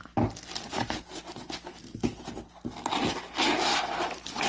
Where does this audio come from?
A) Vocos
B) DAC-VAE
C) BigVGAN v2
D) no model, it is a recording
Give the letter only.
D